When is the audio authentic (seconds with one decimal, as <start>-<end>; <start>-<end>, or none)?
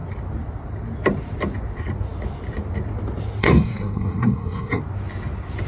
0.0-3.4; 4.8-5.7